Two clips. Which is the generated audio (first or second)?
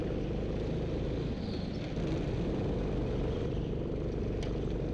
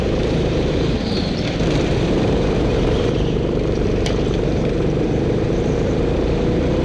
second